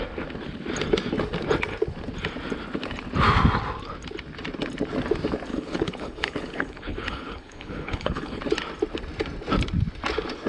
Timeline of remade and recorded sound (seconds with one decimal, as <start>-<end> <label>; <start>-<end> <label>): 0.0-5.5 recorded; 5.5-8.4 remade; 8.4-10.5 recorded